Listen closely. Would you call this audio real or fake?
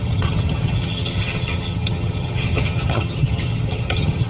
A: fake